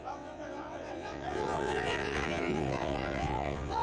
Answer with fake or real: fake